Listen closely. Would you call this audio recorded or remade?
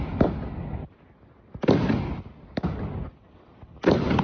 recorded